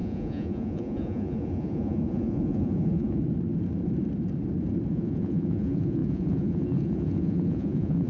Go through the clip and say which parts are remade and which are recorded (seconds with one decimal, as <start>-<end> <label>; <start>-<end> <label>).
0.0-3.2 remade; 3.2-4.9 recorded; 4.9-8.1 remade